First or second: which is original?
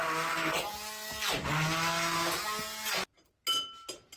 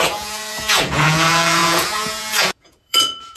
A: first